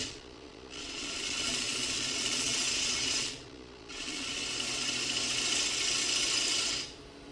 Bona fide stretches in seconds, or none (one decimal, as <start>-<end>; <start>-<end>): 4.4-7.3